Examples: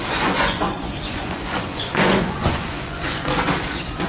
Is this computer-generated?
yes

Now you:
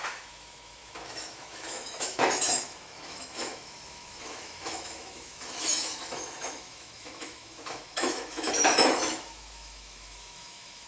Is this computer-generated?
yes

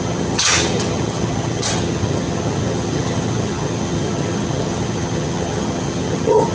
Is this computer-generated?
yes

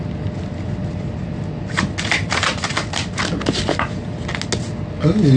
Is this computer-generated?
no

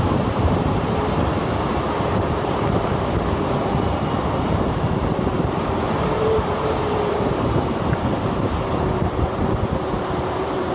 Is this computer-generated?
yes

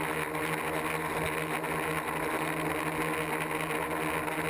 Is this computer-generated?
no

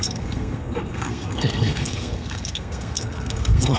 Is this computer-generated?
yes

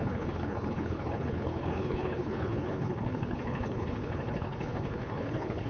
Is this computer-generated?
yes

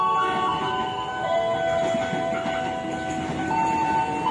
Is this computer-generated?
no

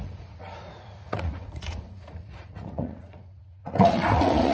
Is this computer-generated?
yes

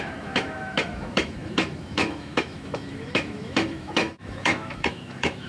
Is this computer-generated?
yes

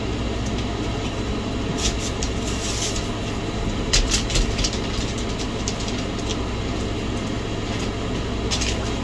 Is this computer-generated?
no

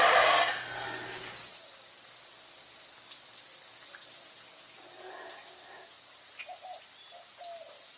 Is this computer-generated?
no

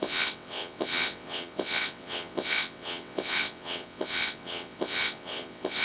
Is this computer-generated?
yes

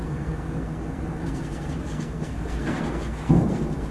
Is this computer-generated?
yes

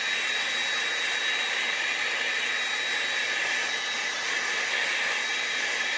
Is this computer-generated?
no